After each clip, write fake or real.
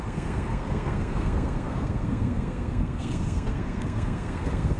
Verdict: fake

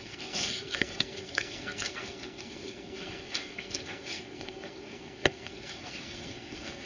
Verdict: fake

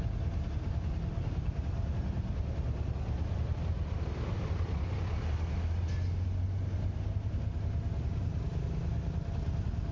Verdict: real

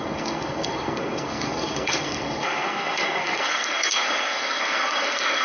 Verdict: fake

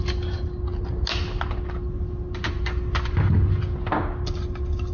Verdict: real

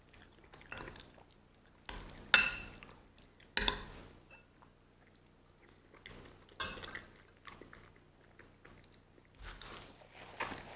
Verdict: real